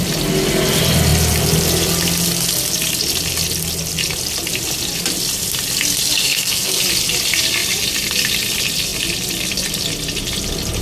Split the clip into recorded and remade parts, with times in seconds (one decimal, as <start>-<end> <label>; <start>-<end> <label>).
0.0-6.2 recorded; 6.2-6.8 remade; 6.8-10.8 recorded